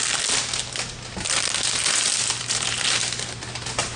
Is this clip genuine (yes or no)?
yes